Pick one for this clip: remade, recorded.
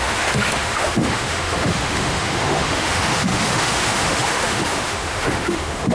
remade